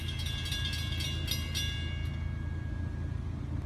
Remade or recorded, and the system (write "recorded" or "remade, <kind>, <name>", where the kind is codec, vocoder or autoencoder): recorded